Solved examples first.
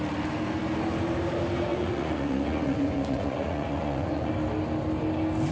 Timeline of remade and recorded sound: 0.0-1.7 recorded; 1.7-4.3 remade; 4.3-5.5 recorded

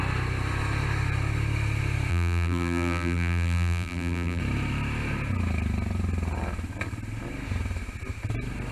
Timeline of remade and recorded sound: 0.0-2.1 recorded; 2.1-4.4 remade; 4.4-8.7 recorded